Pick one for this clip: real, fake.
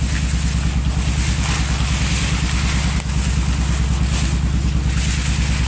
real